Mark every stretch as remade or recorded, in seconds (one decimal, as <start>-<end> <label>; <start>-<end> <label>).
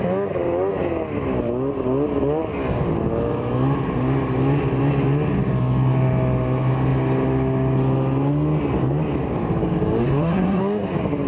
0.0-10.0 recorded; 10.0-10.6 remade; 10.6-11.3 recorded